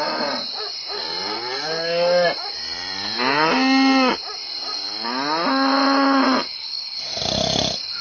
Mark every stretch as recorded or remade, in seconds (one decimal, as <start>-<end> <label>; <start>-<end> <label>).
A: 0.0-6.5 recorded; 6.5-7.0 remade; 7.0-8.0 recorded